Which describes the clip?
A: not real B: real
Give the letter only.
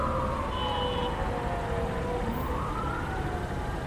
B